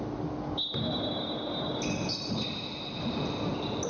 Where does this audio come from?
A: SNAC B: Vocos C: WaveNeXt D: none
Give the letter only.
D